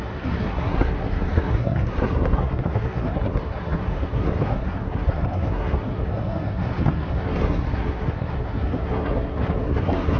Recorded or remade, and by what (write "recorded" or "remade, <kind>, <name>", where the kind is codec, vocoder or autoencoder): remade, codec, SNAC